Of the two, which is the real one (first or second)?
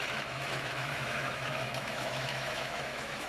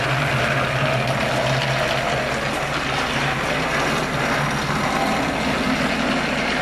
second